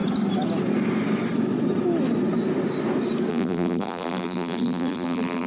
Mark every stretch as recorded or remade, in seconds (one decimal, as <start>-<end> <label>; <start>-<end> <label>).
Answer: 0.0-3.3 recorded; 3.3-5.5 remade